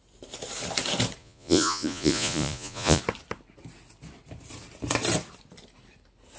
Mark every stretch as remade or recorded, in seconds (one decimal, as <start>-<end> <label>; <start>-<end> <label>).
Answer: 0.0-1.2 recorded; 1.2-3.0 remade; 3.0-6.4 recorded